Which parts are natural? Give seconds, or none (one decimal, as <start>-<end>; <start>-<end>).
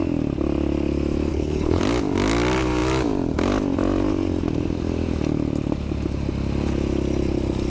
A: 0.0-1.3; 1.8-7.7